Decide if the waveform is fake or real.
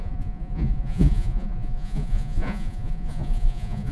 fake